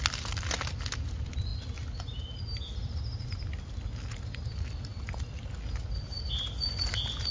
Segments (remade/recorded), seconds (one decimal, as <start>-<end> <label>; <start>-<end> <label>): 0.0-7.3 recorded